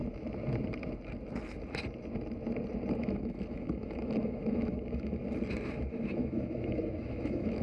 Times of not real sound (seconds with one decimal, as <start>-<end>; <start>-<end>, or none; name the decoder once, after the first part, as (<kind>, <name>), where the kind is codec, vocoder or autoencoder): 2.9-5.2 (autoencoder, DAC-VAE); 6.1-7.6